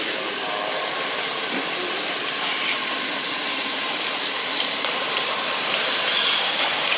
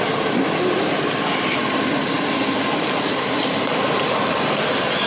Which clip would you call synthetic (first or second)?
first